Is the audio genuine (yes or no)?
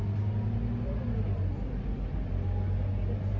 yes